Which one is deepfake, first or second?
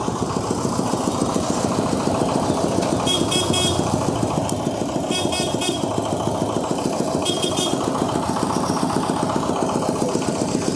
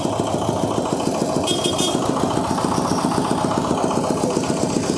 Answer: first